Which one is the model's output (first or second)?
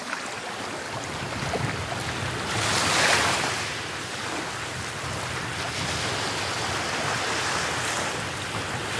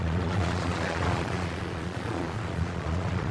second